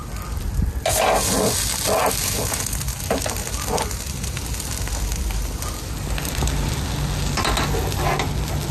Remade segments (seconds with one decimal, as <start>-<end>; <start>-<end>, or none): none